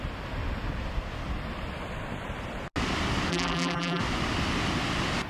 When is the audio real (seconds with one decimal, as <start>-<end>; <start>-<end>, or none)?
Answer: 0.0-3.3; 4.0-5.3